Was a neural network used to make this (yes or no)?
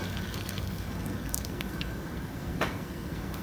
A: yes